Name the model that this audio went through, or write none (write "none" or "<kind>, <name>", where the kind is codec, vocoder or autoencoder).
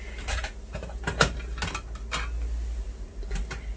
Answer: none